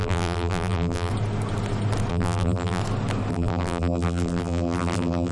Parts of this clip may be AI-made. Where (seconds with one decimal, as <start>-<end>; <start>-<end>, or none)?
0.0-1.1; 2.1-2.8; 3.3-5.3